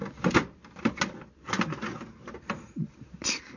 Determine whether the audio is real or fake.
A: real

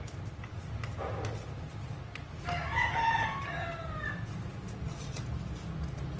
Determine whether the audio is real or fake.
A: real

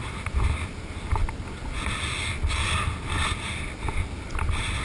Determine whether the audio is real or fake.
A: real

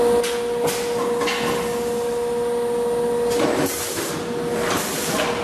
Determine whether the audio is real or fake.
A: real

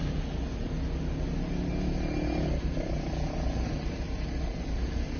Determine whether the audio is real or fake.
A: real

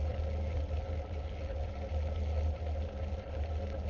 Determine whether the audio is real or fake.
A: real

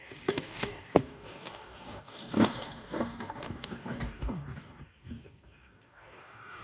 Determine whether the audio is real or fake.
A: fake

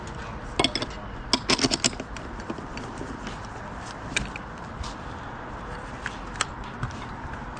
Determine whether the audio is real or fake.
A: real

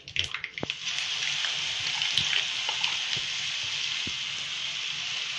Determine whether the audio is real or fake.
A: real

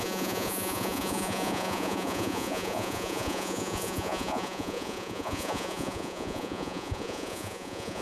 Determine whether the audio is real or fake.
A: fake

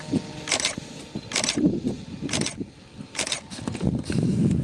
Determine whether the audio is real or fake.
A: real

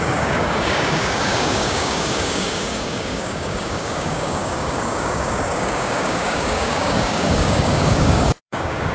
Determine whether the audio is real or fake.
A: fake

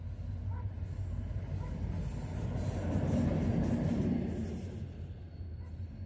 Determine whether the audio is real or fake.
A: real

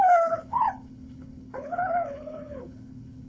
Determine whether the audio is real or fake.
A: fake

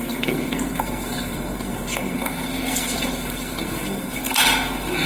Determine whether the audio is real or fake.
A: fake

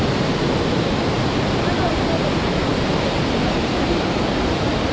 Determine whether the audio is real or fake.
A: fake